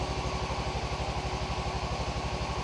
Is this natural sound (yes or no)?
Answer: yes